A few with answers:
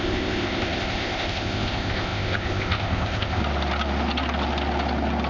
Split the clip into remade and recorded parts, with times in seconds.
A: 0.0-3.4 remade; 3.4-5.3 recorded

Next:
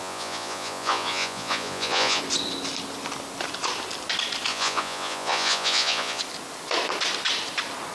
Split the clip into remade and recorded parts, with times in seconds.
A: 0.0-2.2 remade; 2.2-4.5 recorded; 4.5-6.2 remade; 6.2-7.9 recorded

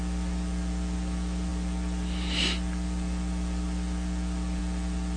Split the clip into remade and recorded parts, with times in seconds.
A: 0.0-5.2 recorded

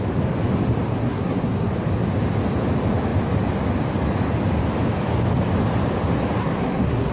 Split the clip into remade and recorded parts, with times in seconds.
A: 0.0-0.9 recorded; 0.9-1.7 remade; 1.7-6.4 recorded; 6.4-7.1 remade

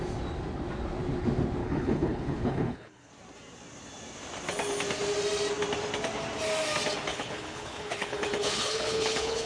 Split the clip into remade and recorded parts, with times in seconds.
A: 0.0-1.6 recorded; 1.6-3.1 remade; 3.1-7.1 recorded; 7.1-9.5 remade

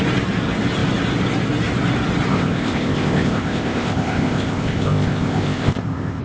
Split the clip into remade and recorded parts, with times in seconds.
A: 0.0-2.3 recorded; 2.3-6.2 remade

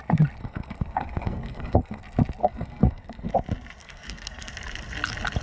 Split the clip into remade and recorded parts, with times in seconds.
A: 0.0-0.4 recorded; 0.4-2.0 remade; 2.0-2.4 recorded; 2.4-3.3 remade; 3.3-3.8 recorded; 3.8-4.5 remade; 4.5-5.4 recorded

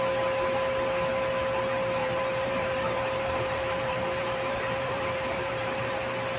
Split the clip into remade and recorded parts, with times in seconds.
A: 0.0-2.0 recorded; 2.0-5.8 remade; 5.8-6.4 recorded